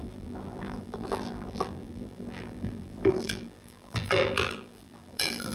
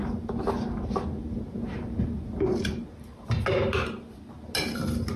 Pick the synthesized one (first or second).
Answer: first